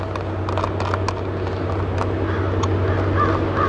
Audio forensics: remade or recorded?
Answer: recorded